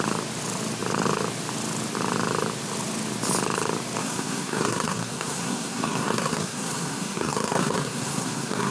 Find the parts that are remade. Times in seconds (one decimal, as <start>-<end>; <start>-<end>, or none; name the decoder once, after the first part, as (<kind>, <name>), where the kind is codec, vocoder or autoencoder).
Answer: 4.0-8.7 (codec, SNAC)